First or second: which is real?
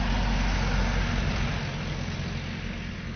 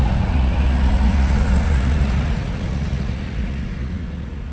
first